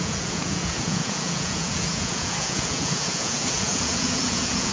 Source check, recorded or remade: remade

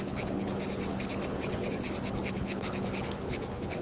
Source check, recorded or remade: remade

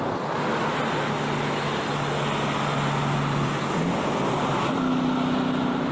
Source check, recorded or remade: recorded